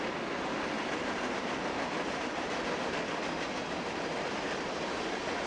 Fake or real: real